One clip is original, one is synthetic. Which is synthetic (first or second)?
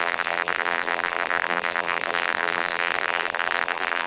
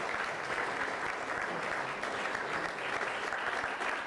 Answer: first